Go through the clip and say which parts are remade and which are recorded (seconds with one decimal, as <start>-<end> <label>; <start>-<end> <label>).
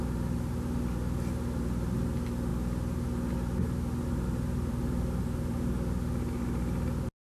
0.0-7.3 recorded